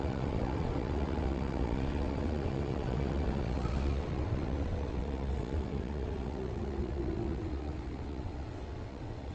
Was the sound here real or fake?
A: fake